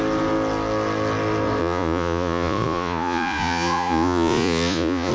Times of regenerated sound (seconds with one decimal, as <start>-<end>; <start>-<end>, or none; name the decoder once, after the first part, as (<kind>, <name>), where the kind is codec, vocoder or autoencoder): 1.6-5.1 (vocoder, Vocos)